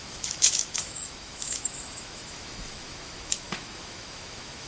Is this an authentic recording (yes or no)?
no